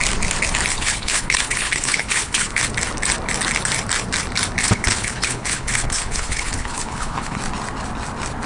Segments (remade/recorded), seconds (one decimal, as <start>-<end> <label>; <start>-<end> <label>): 0.0-0.7 recorded; 0.7-2.6 remade; 2.6-4.6 recorded; 4.6-7.4 remade; 7.4-8.5 recorded